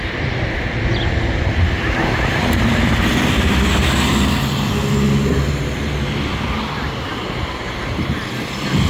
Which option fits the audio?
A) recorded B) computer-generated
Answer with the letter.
A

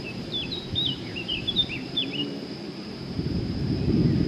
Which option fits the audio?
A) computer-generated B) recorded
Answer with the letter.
A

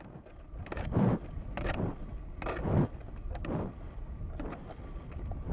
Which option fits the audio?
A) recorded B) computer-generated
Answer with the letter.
A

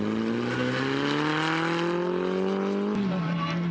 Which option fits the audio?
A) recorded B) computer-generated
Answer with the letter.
A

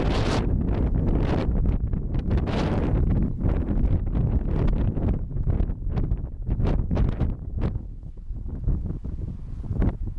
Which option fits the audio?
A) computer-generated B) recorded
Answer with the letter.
B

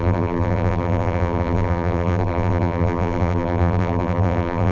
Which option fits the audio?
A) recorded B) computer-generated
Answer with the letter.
B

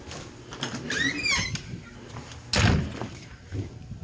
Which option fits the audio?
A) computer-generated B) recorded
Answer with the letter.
B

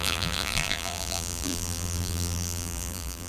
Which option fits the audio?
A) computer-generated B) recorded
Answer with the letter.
A